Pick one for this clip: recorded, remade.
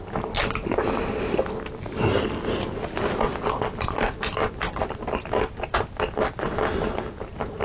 recorded